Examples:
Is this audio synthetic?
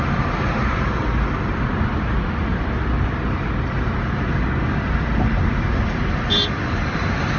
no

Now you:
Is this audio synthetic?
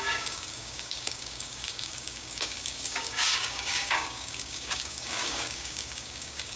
yes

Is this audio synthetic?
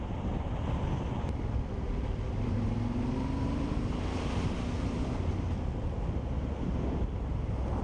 no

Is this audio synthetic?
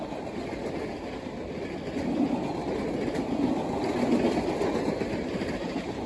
no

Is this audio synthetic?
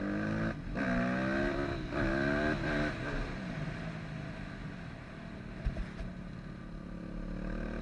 no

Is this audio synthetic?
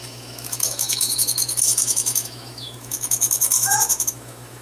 yes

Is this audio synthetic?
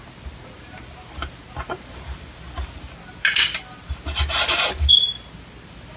no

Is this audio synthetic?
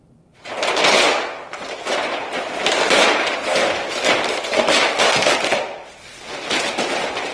no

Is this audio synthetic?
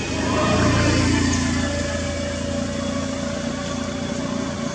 no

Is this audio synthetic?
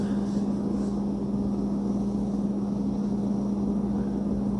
no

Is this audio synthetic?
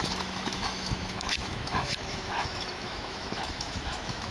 yes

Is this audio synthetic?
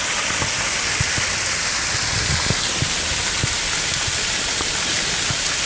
no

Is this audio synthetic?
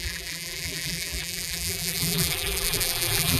yes